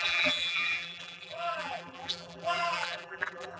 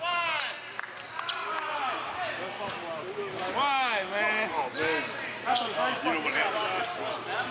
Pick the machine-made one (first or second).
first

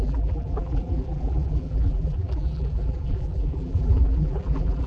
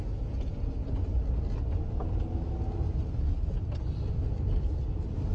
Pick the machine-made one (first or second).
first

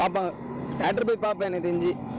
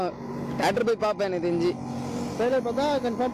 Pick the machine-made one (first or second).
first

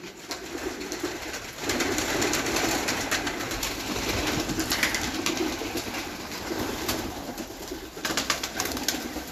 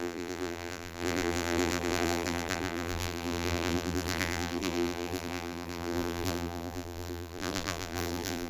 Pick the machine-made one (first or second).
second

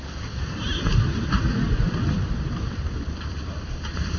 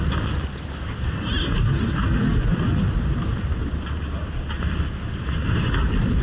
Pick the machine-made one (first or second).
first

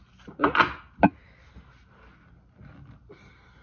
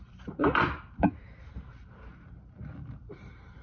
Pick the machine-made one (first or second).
second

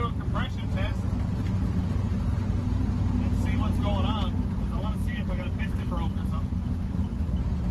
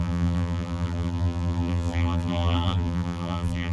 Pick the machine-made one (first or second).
second